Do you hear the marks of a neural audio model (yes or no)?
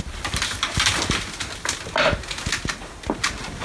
no